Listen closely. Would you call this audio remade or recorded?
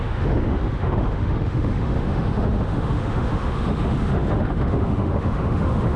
remade